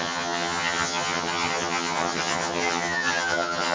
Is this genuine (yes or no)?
no